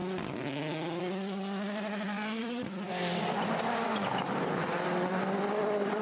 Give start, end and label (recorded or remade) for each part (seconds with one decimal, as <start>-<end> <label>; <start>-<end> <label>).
0.0-1.0 recorded; 1.0-6.0 remade